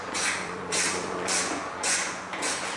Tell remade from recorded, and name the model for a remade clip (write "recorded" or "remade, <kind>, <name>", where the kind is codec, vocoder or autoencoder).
remade, vocoder, Vocos